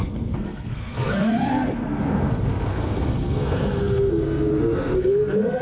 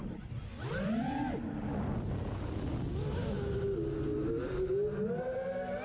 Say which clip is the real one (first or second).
second